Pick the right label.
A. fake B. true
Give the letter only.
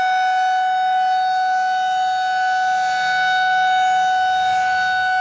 B